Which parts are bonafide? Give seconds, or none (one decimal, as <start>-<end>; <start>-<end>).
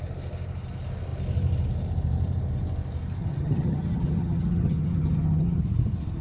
0.0-3.2; 5.6-6.2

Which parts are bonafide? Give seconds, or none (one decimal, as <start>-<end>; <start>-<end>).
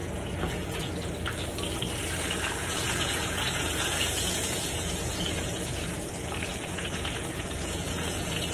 0.9-2.6; 5.9-6.5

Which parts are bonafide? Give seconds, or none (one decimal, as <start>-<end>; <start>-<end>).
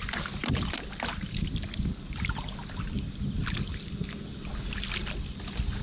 0.0-5.8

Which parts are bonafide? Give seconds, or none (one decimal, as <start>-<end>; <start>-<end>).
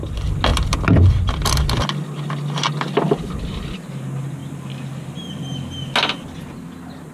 0.0-7.1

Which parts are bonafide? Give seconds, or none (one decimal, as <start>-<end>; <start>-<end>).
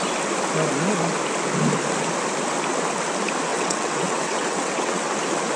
0.0-3.5; 5.1-5.6